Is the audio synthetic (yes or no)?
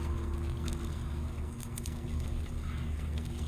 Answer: yes